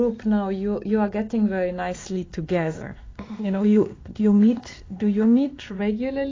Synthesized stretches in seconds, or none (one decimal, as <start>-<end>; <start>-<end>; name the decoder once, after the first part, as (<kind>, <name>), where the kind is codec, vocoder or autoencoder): 2.0-5.8 (codec, ZipCodec)